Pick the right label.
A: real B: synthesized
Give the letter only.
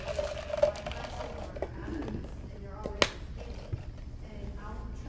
A